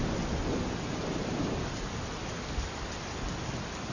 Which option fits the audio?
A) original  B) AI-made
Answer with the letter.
A